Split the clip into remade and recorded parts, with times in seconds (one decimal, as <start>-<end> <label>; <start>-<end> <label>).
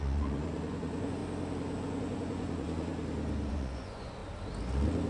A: 0.0-1.2 remade; 1.2-1.8 recorded; 1.8-2.9 remade; 2.9-3.5 recorded; 3.5-4.2 remade; 4.2-5.1 recorded